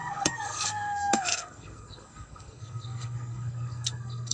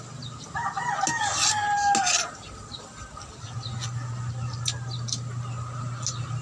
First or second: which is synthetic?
first